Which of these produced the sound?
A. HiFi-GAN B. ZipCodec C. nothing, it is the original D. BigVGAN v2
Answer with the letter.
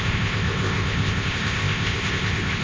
B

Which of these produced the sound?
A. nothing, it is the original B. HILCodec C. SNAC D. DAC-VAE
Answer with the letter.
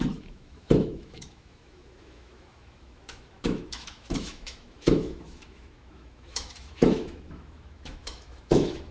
D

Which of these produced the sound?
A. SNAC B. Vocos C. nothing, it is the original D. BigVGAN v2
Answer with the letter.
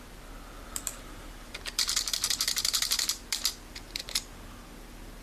D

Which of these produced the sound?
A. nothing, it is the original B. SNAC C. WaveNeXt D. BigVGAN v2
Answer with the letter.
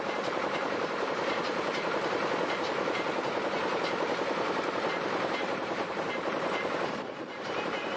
D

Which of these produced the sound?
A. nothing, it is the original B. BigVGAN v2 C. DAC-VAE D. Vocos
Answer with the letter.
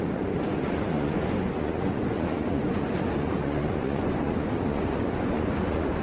D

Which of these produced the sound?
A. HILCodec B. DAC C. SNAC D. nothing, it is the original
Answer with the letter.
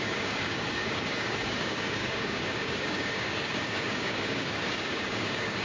B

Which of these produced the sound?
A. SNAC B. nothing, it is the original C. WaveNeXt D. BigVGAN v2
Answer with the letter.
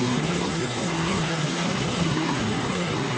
A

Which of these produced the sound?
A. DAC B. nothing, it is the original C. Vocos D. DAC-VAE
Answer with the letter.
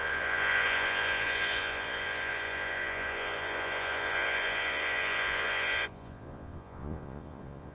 C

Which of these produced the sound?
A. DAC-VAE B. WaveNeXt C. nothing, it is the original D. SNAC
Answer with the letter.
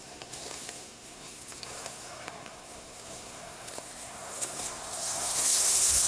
D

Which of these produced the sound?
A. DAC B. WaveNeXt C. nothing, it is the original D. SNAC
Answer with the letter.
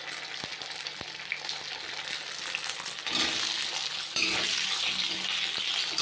C